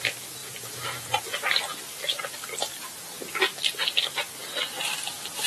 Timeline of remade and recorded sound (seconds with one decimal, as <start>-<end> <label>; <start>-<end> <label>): 0.0-0.4 recorded; 0.4-1.2 remade; 1.2-1.7 recorded; 1.7-2.4 remade; 2.4-5.5 recorded